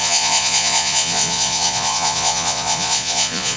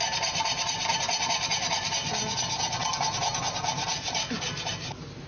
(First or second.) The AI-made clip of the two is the first